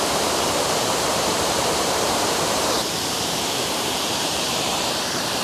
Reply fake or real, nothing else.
fake